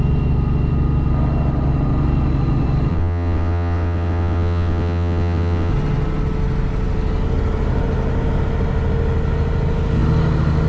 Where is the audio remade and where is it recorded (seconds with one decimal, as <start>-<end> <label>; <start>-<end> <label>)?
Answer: 0.0-2.9 recorded; 2.9-5.7 remade; 5.7-10.7 recorded